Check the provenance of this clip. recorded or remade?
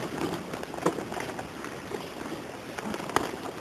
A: remade